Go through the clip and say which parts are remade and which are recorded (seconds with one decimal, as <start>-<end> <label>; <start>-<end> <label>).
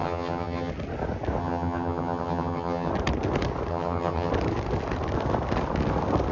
0.0-0.7 remade; 0.7-1.4 recorded; 1.4-2.9 remade; 2.9-3.7 recorded; 3.7-4.3 remade; 4.3-6.3 recorded